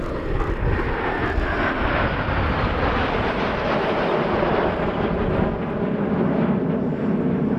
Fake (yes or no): no